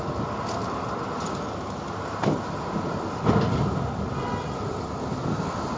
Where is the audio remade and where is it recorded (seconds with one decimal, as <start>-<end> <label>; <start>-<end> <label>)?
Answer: 0.0-5.8 recorded